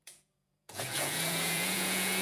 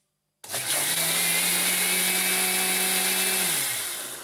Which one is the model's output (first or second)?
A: first